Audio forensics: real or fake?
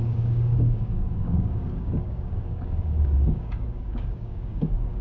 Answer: fake